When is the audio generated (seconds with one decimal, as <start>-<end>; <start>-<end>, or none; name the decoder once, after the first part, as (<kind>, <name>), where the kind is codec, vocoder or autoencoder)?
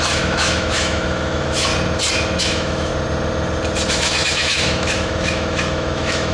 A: 0.0-1.7 (autoencoder, DAC-VAE); 2.4-2.9; 3.9-6.3